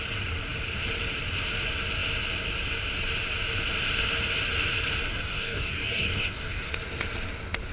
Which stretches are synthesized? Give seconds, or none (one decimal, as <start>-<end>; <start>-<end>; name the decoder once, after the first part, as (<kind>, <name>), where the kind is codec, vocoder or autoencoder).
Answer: 5.1-6.7 (codec, DAC)